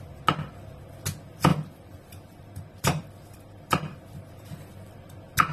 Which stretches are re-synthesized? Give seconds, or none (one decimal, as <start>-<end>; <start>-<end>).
1.5-4.3